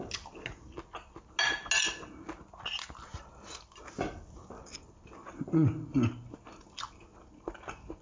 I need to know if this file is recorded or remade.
recorded